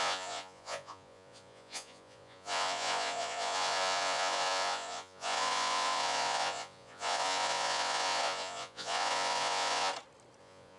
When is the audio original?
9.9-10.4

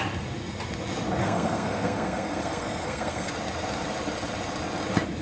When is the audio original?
0.0-1.2; 3.3-5.2

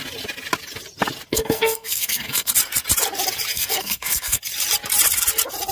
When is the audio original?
0.0-1.3; 2.5-3.5; 4.4-5.7

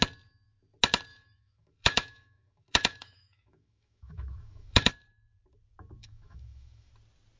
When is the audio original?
0.0-1.1; 4.9-6.0; 6.9-7.4